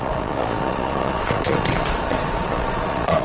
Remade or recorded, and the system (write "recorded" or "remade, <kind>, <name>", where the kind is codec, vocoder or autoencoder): remade, vocoder, Vocos